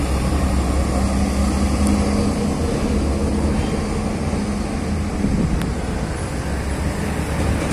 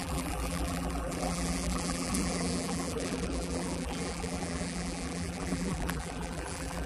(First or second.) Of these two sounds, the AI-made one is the second